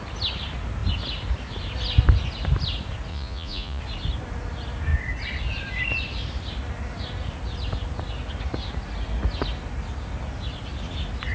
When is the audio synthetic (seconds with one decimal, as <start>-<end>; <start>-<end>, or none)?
3.1-3.8